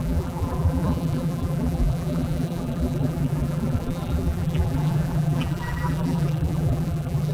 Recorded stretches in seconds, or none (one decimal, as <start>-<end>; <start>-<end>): none